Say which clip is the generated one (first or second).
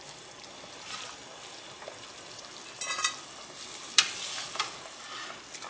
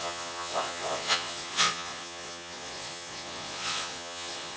second